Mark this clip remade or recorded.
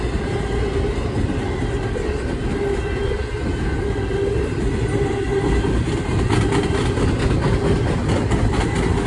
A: recorded